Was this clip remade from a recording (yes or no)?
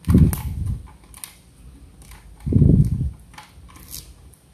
no